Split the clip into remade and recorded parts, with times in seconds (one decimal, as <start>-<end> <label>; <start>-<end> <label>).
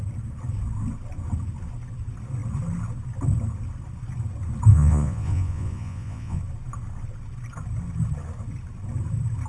0.0-4.7 recorded; 4.7-6.4 remade; 6.4-9.5 recorded